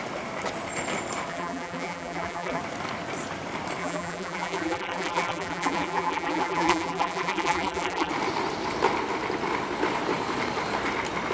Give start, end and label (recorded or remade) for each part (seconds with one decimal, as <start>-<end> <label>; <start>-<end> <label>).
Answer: 0.0-1.3 recorded; 1.3-2.6 remade; 2.6-3.8 recorded; 3.8-8.1 remade; 8.1-11.3 recorded